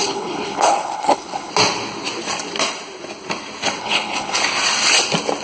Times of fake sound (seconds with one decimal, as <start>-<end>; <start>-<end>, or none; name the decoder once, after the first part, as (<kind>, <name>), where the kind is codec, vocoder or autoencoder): 0.0-1.5 (codec, HILCodec); 3.8-4.4